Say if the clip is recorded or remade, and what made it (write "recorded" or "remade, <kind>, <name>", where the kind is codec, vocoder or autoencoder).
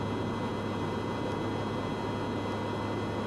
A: recorded